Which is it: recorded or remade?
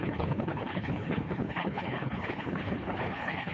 remade